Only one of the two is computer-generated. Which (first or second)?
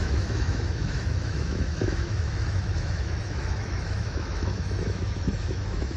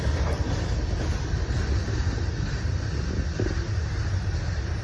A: first